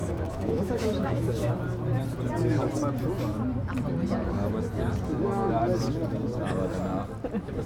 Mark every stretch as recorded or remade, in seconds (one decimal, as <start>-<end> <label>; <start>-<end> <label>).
0.0-1.5 remade; 1.5-7.7 recorded